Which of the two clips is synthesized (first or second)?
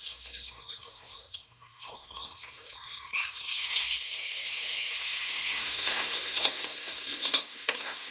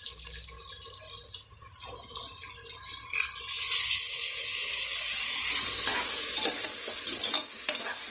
first